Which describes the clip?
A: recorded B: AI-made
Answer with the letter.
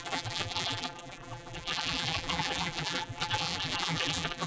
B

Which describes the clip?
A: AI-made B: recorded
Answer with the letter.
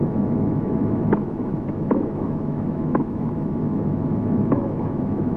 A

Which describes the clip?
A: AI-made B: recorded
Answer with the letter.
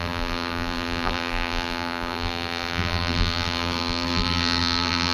A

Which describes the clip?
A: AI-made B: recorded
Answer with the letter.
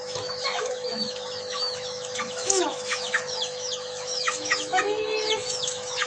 A